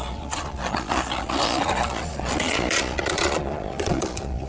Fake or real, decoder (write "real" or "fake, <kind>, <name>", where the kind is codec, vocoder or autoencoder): fake, vocoder, Vocos